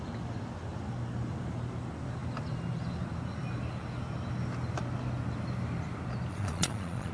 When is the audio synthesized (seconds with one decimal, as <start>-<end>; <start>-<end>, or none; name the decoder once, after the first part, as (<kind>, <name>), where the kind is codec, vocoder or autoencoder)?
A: 6.3-7.1 (vocoder, Vocos)